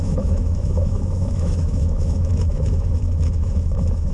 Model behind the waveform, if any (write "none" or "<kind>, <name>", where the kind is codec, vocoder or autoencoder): autoencoder, DAC-VAE